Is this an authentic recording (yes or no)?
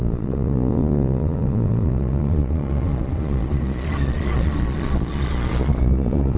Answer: no